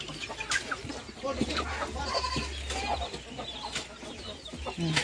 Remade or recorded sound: recorded